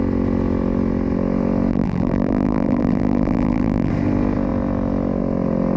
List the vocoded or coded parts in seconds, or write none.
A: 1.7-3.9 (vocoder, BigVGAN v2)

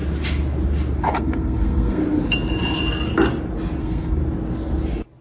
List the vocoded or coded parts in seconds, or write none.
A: 1.1-2.0 (codec, SNAC); 3.8-4.2

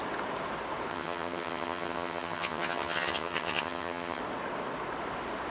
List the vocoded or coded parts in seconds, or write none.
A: 0.9-4.2 (vocoder, HiFi-GAN)

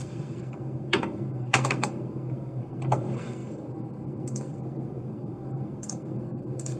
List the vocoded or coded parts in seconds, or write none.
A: 0.0-6.8 (codec, SNAC)

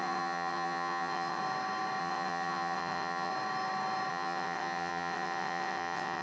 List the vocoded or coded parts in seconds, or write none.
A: 0.0-1.4 (vocoder, WaveNeXt); 2.0-3.3; 4.1-6.2

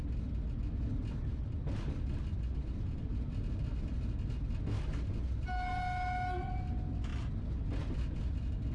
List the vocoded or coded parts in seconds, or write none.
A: none